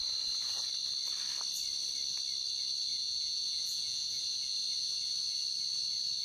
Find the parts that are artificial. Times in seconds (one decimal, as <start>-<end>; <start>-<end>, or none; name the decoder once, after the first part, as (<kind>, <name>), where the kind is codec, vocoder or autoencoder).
2.9-4.2 (vocoder, Vocos)